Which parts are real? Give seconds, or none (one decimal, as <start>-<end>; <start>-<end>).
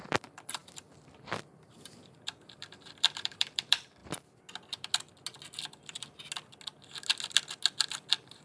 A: 4.0-7.9